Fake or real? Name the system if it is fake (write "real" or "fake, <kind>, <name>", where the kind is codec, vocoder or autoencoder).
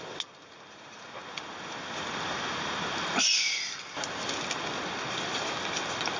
real